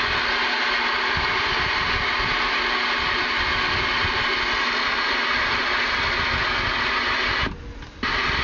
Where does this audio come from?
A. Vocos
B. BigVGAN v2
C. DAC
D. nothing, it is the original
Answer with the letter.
D